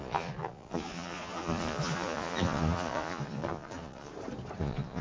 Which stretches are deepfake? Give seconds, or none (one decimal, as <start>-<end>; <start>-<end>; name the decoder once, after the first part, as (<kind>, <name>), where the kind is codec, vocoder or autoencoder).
0.0-4.1 (vocoder, Vocos); 4.6-5.0